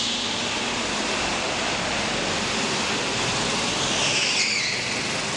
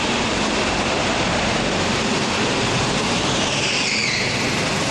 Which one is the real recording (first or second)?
first